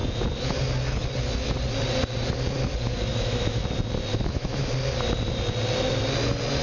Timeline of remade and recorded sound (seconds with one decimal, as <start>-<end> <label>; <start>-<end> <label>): 0.0-3.1 recorded; 3.1-3.6 remade; 3.6-4.1 recorded; 4.1-4.7 remade; 4.7-6.6 recorded